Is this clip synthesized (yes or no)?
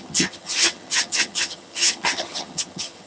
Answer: yes